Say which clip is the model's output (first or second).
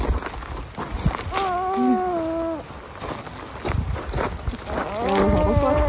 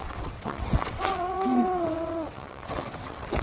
second